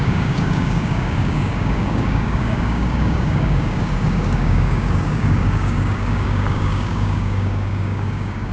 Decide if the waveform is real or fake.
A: fake